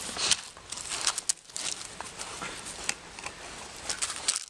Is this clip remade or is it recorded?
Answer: recorded